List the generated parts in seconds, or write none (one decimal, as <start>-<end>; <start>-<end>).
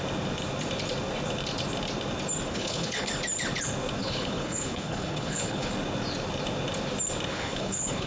2.5-3.1; 4.0-5.7; 7.3-8.1